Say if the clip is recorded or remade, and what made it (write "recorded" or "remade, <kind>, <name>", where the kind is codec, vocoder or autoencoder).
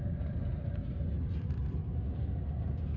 recorded